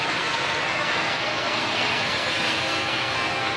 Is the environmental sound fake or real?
fake